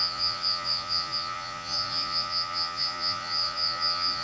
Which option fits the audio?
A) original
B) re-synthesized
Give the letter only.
B